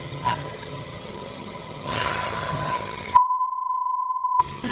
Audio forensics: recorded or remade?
remade